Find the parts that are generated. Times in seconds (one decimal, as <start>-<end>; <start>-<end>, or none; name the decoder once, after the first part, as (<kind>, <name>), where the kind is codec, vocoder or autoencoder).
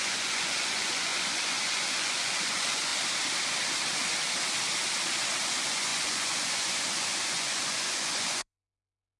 0.0-2.9 (vocoder, Vocos); 5.5-9.2